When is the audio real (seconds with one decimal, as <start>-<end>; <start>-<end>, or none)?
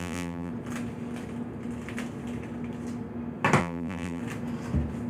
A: 0.5-3.6; 4.2-5.1